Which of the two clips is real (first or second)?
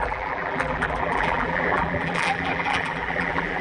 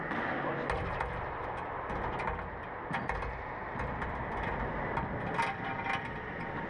second